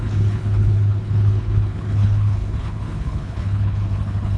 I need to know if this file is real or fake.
fake